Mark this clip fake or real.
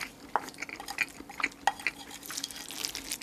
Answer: real